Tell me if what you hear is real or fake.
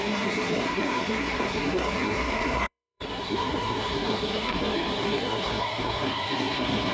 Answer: fake